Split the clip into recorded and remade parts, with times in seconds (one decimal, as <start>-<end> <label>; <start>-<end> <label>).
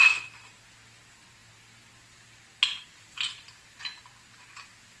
0.0-5.0 recorded